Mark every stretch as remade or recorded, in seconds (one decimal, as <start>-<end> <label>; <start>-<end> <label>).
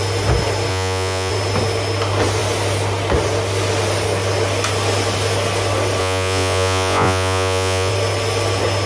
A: 0.0-0.7 recorded; 0.7-1.3 remade; 1.3-6.0 recorded; 6.0-7.9 remade; 7.9-8.9 recorded